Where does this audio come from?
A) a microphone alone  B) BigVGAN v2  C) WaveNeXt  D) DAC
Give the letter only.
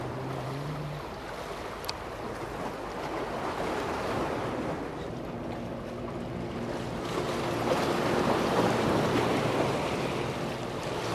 A